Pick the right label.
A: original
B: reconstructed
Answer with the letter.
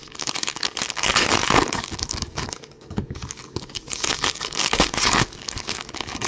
B